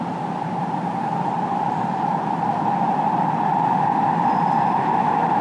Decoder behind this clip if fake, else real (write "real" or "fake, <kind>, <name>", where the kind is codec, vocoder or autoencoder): fake, vocoder, BigVGAN v2